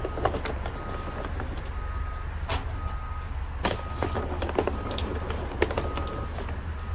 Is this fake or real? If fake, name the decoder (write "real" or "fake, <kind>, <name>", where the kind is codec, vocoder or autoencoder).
real